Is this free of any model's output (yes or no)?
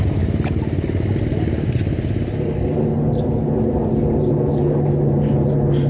yes